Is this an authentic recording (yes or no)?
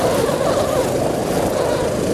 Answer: yes